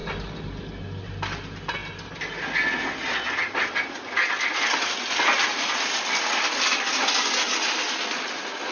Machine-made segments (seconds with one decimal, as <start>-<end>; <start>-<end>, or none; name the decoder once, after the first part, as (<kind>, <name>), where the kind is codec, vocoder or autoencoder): none